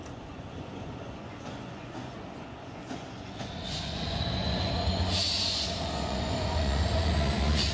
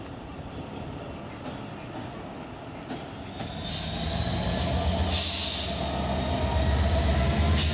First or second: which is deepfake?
first